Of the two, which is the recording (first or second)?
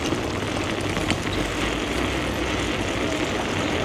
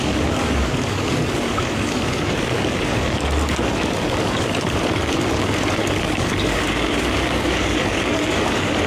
first